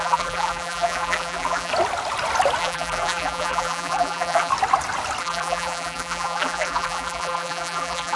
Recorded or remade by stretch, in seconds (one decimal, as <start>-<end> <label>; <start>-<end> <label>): 0.0-1.7 remade; 1.7-2.6 recorded; 2.6-4.5 remade; 4.5-5.2 recorded; 5.2-8.2 remade